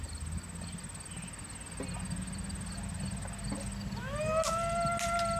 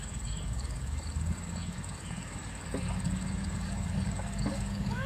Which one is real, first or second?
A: first